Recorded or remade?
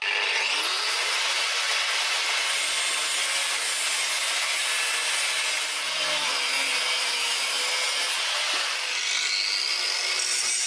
recorded